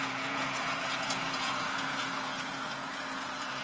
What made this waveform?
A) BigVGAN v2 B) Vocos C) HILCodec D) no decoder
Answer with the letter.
B